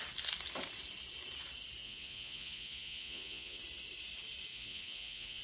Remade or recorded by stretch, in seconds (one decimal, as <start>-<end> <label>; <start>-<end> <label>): 0.0-1.8 recorded; 1.8-3.6 remade; 3.6-4.5 recorded; 4.5-5.4 remade